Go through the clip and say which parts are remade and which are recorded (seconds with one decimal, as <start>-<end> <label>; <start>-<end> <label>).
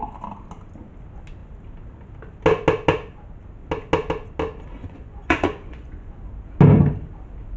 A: 0.0-4.8 recorded; 4.8-6.2 remade; 6.2-7.6 recorded